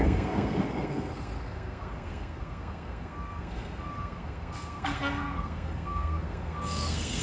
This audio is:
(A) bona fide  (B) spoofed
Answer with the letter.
B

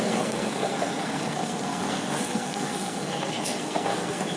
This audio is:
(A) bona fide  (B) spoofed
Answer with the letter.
B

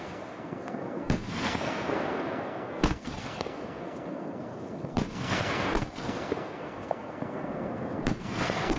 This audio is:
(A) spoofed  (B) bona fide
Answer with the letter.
A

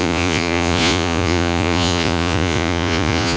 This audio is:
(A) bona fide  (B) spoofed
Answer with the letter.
B